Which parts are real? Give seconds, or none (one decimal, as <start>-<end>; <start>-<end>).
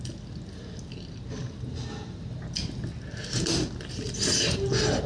0.0-5.1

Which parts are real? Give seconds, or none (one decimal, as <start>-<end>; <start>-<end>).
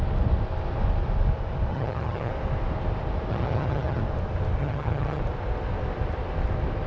0.0-1.7; 2.3-3.3; 4.0-4.6; 5.2-6.9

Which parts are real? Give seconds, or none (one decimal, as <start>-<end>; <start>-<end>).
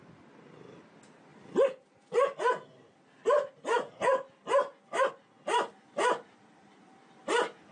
0.0-7.7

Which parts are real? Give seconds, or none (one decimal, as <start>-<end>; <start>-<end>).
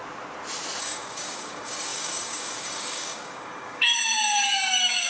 0.0-0.8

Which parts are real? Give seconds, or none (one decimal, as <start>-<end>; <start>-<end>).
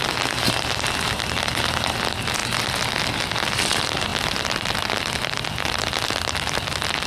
0.0-7.1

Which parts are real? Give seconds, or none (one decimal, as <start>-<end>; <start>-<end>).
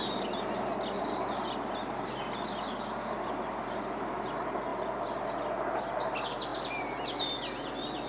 0.0-8.1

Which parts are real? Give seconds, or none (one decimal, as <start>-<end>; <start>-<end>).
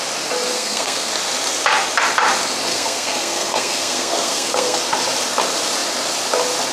0.0-0.5; 1.1-2.7; 4.8-6.7